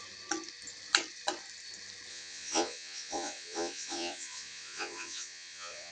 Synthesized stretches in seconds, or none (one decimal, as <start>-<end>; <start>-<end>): 2.1-5.9